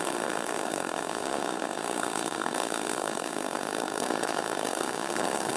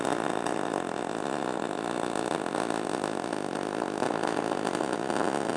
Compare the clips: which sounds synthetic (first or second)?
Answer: first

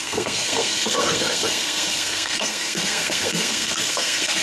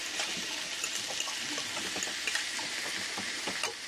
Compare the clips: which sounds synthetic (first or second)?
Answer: first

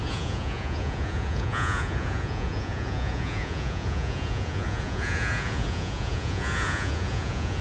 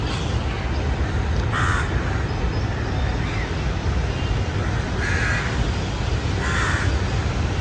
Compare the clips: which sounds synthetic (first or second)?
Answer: first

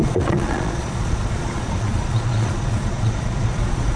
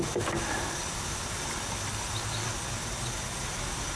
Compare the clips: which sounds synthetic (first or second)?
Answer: first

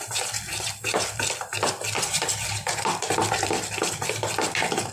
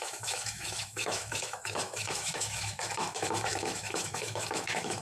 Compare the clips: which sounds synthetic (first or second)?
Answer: second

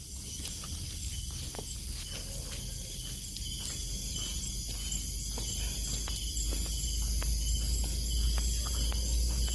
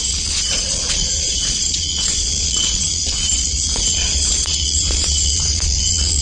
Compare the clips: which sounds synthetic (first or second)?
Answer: second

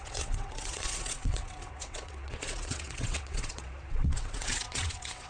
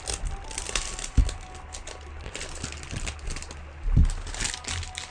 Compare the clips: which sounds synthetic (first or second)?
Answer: first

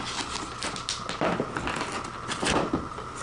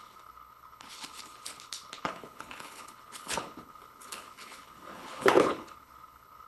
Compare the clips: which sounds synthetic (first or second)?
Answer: second